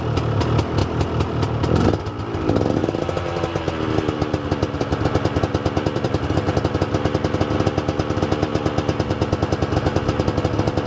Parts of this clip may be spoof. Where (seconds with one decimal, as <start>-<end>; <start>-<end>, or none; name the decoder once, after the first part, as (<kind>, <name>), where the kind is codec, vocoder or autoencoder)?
0.8-2.2 (vocoder, BigVGAN v2); 2.8-6.6